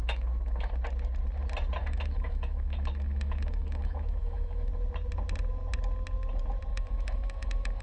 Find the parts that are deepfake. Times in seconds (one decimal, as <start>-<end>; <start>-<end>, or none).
0.0-0.7; 1.8-4.7; 6.7-7.8